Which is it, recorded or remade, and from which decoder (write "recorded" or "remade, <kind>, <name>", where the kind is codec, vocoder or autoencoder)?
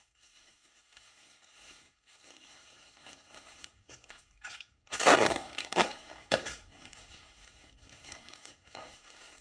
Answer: remade, codec, SNAC